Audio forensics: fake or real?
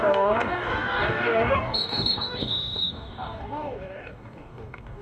fake